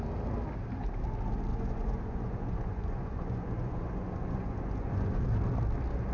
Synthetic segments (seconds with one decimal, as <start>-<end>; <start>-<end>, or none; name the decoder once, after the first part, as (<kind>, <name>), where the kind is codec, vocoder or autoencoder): 1.5-5.2 (vocoder, Vocos)